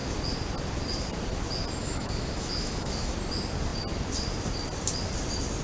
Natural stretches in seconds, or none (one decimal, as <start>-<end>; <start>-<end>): 0.0-1.8; 3.1-5.6